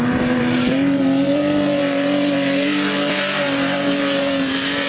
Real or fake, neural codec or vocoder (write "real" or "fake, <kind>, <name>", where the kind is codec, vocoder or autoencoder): fake, vocoder, BigVGAN v2